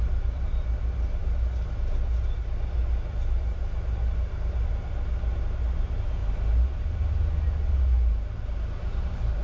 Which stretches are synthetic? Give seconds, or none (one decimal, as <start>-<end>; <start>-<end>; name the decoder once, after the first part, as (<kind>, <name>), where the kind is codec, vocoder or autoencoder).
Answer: none